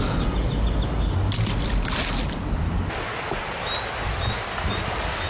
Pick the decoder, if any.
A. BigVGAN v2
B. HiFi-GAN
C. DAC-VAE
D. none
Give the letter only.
D